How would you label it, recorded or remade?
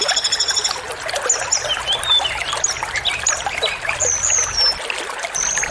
recorded